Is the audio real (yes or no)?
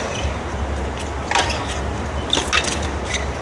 yes